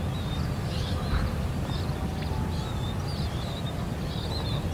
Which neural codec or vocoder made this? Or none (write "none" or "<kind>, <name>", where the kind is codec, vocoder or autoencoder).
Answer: none